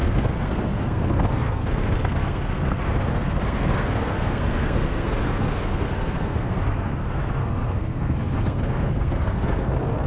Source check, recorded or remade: remade